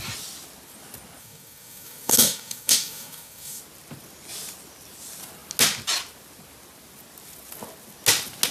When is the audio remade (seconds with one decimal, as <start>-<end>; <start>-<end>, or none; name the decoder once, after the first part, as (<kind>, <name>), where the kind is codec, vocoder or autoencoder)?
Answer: 1.2-3.6 (codec, DAC)